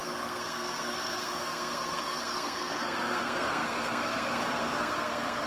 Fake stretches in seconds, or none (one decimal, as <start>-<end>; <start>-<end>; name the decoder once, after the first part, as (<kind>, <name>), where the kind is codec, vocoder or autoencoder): 0.0-5.5 (codec, SNAC)